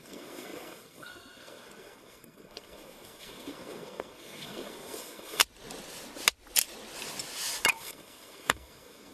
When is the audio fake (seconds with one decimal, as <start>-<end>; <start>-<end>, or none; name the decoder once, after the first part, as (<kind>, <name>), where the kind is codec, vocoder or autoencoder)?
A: 0.0-5.4 (codec, SNAC); 7.7-9.1

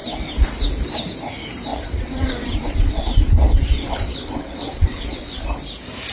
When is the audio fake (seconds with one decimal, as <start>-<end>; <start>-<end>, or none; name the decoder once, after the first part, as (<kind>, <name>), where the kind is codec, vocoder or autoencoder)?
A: 1.7-5.4 (vocoder, WaveNeXt)

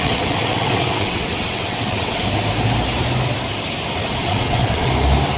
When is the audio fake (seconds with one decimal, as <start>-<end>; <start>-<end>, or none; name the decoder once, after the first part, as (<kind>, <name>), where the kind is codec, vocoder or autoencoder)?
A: 0.0-2.2 (vocoder, WaveNeXt); 4.2-4.9

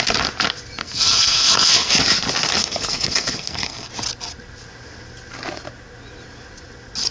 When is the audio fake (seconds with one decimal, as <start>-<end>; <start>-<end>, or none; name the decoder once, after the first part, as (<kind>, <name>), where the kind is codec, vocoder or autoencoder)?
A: 0.8-2.0 (codec, SNAC); 2.6-3.9

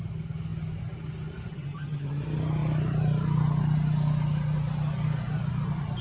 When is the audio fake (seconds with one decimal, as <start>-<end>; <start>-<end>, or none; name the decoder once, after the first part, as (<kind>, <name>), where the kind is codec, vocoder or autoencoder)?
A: 1.5-2.2 (vocoder, HiFi-GAN)

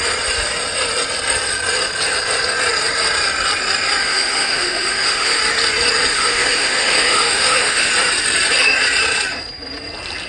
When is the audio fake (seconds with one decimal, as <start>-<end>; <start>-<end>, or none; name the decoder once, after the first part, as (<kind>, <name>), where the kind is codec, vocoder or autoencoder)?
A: 4.0-5.4 (autoencoder, DAC-VAE); 6.1-7.9

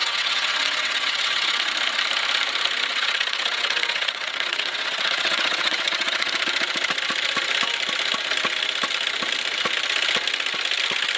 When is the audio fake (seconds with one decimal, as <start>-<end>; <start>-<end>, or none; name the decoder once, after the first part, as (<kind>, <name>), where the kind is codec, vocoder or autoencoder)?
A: 0.0-1.7 (vocoder, WaveNeXt); 2.9-6.3